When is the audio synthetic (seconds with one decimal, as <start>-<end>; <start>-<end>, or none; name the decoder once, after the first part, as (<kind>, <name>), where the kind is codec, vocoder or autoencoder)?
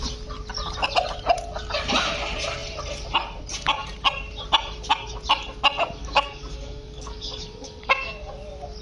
6.0-8.3 (codec, DAC)